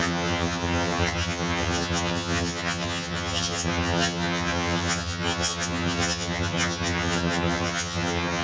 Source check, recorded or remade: remade